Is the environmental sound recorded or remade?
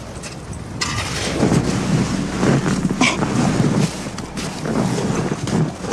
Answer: recorded